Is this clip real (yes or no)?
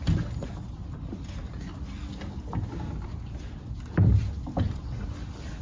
yes